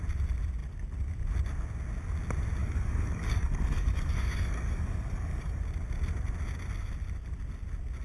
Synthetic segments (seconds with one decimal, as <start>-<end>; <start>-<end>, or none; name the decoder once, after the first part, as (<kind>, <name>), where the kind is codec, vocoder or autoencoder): 2.6-5.6 (codec, DAC)